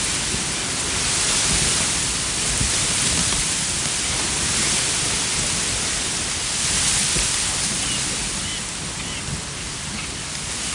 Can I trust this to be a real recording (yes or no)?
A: yes